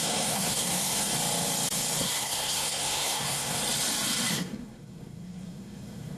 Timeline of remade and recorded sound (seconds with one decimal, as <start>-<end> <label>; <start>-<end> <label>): 0.0-1.1 remade; 1.1-2.0 recorded; 2.0-3.6 remade; 3.6-4.3 recorded; 4.3-6.2 remade